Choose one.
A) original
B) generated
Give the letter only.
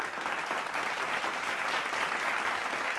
A